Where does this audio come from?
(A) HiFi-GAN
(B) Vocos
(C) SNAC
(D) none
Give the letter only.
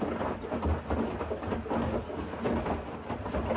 D